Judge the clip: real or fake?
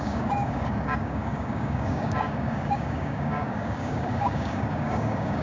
fake